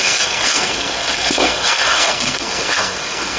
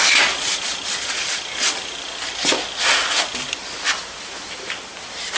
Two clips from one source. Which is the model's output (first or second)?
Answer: first